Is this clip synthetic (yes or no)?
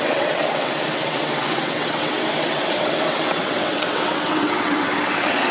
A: yes